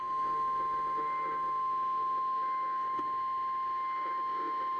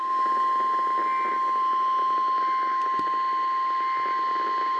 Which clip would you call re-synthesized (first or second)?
first